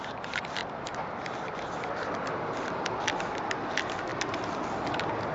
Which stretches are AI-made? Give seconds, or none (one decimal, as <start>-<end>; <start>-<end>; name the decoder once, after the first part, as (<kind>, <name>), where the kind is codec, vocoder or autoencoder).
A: none

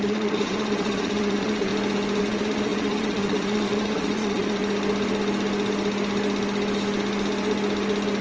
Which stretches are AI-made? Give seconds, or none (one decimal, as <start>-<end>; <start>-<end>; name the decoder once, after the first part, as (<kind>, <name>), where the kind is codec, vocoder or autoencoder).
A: 0.0-1.7 (vocoder, Vocos); 2.2-4.6

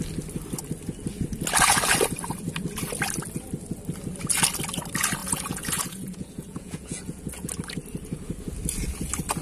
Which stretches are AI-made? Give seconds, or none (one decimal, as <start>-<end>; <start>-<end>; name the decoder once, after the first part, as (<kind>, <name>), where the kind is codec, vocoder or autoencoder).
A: 5.2-7.5 (vocoder, Vocos)

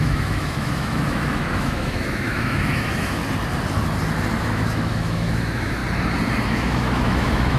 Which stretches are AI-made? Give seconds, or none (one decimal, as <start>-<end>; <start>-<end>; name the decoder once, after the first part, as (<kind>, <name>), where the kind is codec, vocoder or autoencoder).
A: 0.0-3.2 (autoencoder, DAC-VAE); 4.4-5.8; 6.5-7.6